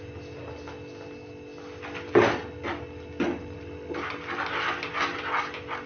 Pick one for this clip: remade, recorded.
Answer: recorded